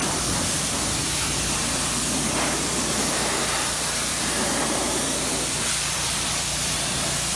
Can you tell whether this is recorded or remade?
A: remade